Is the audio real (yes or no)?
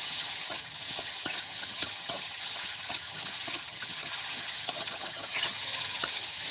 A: no